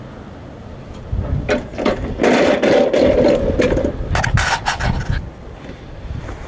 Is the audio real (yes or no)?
yes